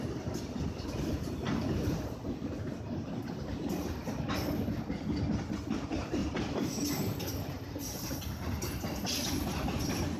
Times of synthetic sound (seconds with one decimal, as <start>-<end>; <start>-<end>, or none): 6.2-8.2